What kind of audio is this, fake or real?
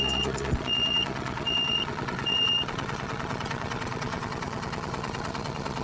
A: fake